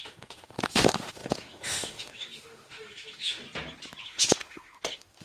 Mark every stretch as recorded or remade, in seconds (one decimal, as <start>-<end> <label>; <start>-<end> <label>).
0.0-3.4 remade; 3.4-4.0 recorded; 4.0-5.2 remade